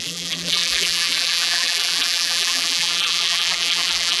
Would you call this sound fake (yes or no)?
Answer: yes